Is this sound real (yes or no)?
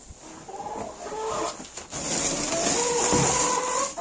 yes